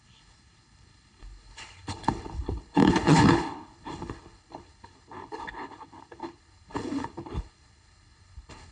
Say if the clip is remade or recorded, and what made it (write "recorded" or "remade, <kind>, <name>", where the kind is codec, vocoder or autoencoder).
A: remade, codec, HILCodec